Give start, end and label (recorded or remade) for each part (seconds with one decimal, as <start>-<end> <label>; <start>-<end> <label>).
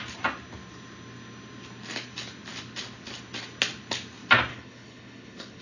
0.0-4.5 recorded; 4.5-5.6 remade